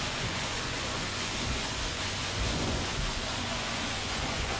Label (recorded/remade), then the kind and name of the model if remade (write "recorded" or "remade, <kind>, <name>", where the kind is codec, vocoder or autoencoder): remade, vocoder, Vocos